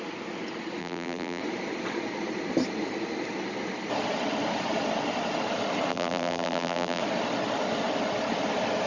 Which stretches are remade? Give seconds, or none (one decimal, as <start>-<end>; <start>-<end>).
0.8-1.4; 5.9-7.0